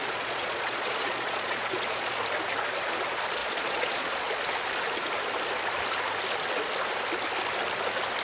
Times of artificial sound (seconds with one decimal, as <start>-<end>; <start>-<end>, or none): 0.0-2.2; 3.4-4.3